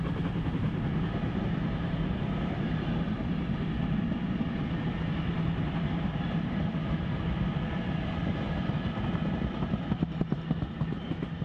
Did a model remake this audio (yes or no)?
no